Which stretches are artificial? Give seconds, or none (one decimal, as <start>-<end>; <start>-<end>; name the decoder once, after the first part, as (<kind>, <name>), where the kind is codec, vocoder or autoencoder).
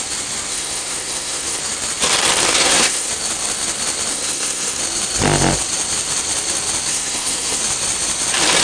0.5-1.6 (codec, SNAC); 2.5-3.1; 4.1-4.8; 6.9-7.6